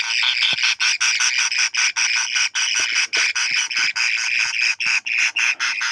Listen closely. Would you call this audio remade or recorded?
recorded